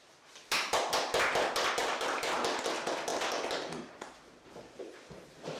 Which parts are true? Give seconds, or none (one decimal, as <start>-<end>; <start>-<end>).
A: 0.0-1.8; 2.4-3.1; 3.9-5.6